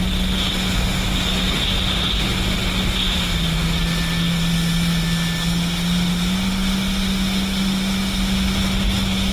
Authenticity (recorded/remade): recorded